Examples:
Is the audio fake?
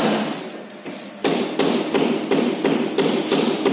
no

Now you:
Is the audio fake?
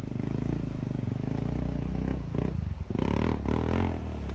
no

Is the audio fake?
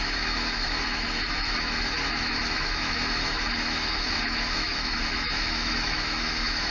yes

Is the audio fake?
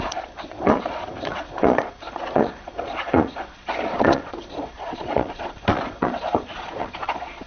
yes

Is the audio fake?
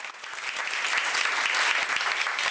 no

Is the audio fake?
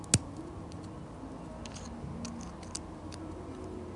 no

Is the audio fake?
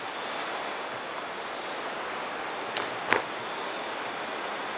no